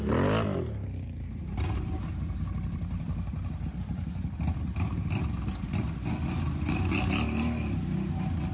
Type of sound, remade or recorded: recorded